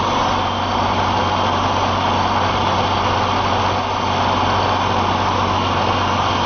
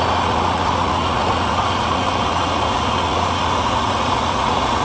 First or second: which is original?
first